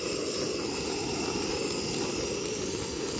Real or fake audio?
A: real